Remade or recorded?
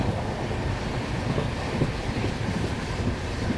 remade